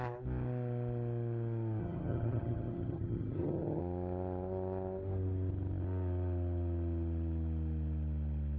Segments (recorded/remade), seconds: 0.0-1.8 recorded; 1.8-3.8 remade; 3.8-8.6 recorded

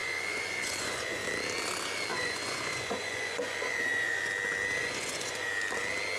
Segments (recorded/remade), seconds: 0.0-1.2 remade; 1.2-2.1 recorded; 2.1-4.3 remade; 4.3-4.8 recorded; 4.8-5.5 remade; 5.5-6.2 recorded

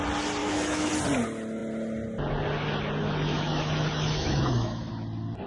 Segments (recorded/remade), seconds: 0.0-0.4 recorded; 0.4-0.9 remade; 0.9-3.0 recorded; 3.0-4.9 remade; 4.9-5.5 recorded

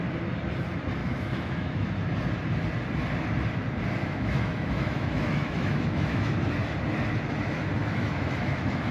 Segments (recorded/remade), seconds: 0.0-1.0 recorded; 1.0-1.9 remade; 1.9-4.0 recorded; 4.0-6.6 remade; 6.6-7.8 recorded; 7.8-8.9 remade

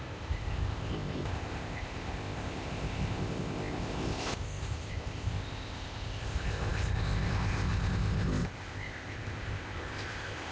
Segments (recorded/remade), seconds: 0.0-10.5 remade

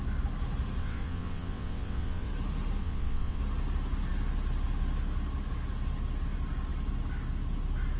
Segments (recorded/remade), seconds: 0.0-0.8 recorded; 0.8-2.3 remade; 2.3-2.8 recorded; 2.8-3.4 remade; 3.4-8.0 recorded